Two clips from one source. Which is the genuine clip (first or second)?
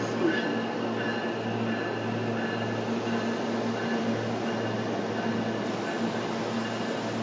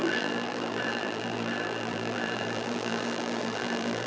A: first